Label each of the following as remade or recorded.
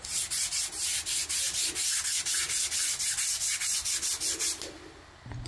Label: recorded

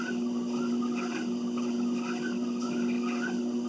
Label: recorded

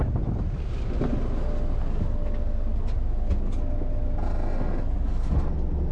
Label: recorded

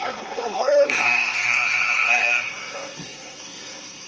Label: remade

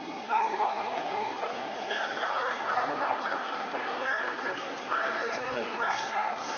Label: remade